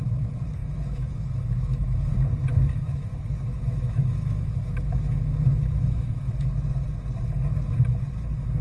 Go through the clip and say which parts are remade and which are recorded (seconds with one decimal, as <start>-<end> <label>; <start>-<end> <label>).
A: 0.0-0.6 recorded; 0.6-2.1 remade; 2.1-2.5 recorded; 2.5-6.3 remade; 6.3-8.6 recorded